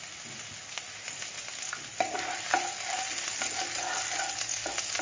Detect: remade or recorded recorded